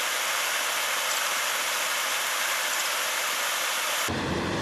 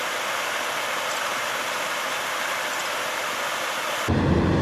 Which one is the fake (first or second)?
first